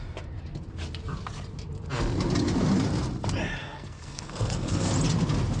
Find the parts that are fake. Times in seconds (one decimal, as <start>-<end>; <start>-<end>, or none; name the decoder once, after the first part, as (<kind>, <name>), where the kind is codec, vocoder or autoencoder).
3.6-4.9 (codec, SNAC)